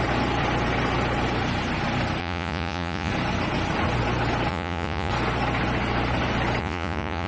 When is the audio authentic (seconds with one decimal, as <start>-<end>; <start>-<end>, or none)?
0.0-2.2; 3.1-4.5; 5.1-6.6